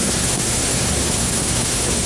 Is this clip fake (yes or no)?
yes